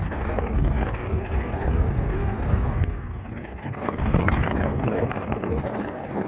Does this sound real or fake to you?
fake